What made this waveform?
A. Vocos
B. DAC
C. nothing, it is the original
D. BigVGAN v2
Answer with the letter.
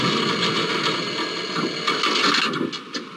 C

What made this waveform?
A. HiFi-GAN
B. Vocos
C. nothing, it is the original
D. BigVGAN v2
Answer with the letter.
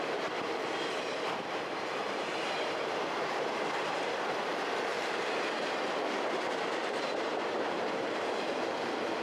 D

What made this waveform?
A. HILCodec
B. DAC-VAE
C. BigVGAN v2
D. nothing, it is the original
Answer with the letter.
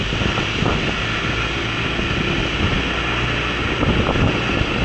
D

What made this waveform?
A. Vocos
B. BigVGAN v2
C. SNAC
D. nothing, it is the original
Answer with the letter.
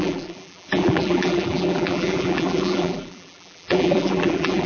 B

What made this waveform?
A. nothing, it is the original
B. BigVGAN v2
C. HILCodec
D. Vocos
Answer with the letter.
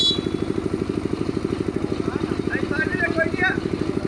A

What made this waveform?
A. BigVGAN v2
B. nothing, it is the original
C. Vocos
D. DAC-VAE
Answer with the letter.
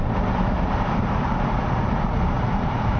A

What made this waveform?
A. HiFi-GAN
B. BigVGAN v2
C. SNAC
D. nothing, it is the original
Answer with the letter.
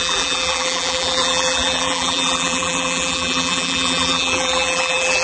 B